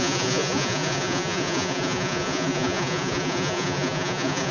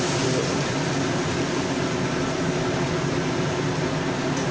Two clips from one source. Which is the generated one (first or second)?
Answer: first